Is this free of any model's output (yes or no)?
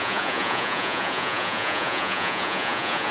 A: no